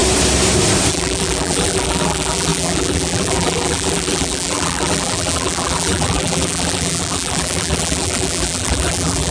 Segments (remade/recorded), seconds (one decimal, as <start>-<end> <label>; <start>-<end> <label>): 0.0-0.9 recorded; 0.9-9.3 remade